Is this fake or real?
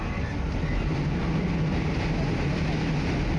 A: real